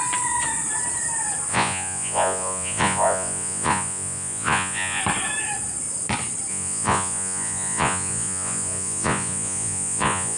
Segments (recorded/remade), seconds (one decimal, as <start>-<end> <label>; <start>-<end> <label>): 0.0-1.5 recorded; 1.5-5.0 remade; 5.0-6.5 recorded; 6.5-10.4 remade